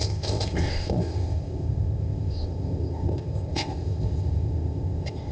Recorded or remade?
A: remade